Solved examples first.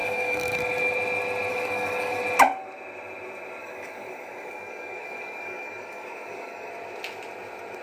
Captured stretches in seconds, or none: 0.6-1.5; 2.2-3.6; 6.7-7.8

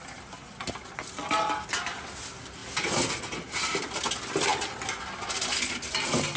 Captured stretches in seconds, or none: 0.0-6.4

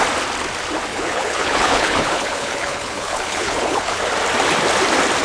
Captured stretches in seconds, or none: 0.0-0.9; 4.0-5.2

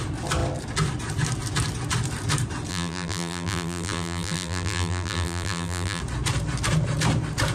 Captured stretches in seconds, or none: 0.0-2.7; 6.0-7.5

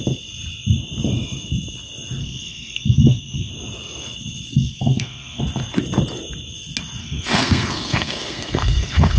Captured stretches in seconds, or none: 0.0-2.2; 3.5-4.5; 5.4-7.0